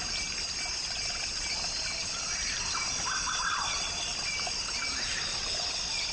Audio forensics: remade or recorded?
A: recorded